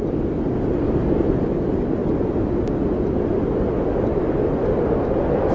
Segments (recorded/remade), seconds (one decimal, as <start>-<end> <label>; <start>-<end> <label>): 0.0-5.5 recorded